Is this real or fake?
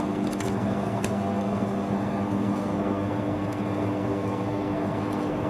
fake